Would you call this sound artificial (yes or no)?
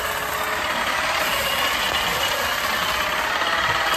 no